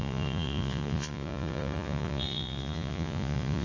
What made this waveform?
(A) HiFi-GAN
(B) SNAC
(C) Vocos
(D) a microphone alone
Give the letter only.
C